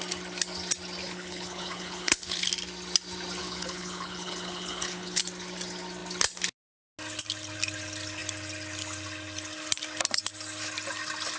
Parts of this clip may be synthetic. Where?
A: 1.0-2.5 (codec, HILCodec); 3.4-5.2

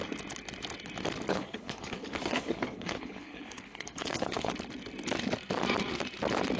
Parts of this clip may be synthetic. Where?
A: 1.3-4.5 (codec, HILCodec)